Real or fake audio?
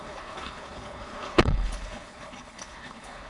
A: fake